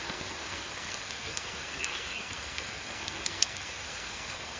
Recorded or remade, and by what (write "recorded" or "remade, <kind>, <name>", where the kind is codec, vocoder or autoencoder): remade, codec, SNAC